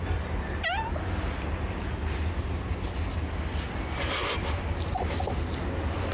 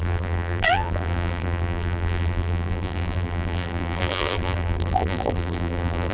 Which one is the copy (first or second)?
second